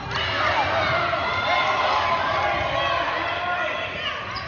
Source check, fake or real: real